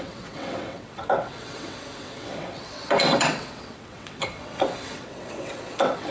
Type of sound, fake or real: fake